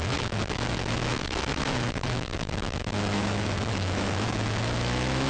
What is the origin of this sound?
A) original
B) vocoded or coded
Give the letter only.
B